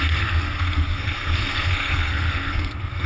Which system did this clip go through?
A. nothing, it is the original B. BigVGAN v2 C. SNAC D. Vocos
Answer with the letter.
C